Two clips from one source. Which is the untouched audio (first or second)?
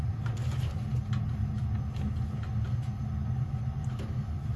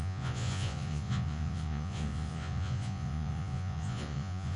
first